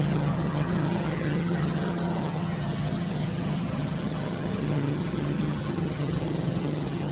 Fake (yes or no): yes